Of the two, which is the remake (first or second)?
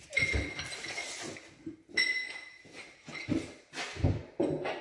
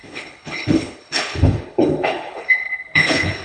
second